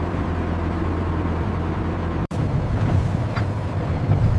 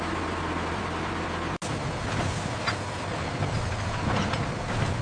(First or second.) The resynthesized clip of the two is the first